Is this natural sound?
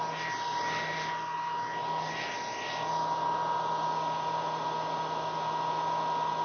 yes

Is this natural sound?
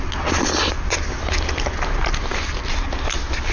yes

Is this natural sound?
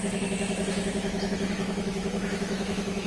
no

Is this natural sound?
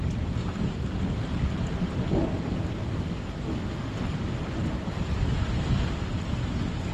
yes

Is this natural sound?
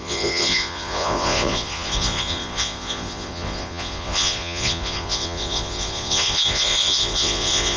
no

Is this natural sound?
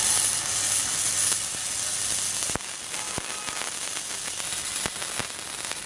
yes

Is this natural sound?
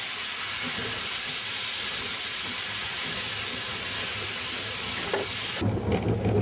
yes